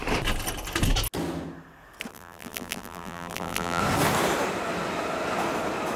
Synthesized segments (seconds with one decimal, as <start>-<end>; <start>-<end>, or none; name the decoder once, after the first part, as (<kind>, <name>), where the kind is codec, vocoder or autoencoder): 2.1-3.8 (vocoder, BigVGAN v2)